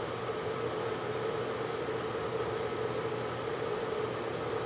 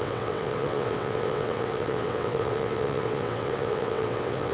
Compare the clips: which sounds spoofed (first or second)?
second